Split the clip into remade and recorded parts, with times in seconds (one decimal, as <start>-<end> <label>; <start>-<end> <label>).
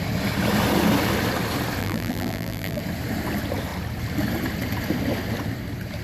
0.0-1.8 recorded; 1.8-2.8 remade; 2.8-6.0 recorded